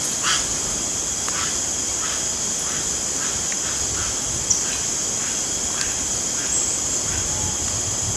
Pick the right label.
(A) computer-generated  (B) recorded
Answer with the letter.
B